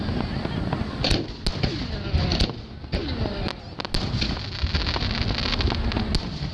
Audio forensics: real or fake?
real